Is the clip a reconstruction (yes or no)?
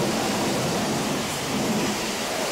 yes